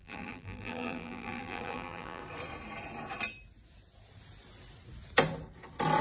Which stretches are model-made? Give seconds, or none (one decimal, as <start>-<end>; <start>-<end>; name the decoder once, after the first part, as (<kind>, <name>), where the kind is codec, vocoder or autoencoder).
0.0-2.2 (vocoder, BigVGAN v2)